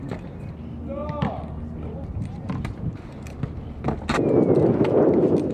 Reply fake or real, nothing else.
real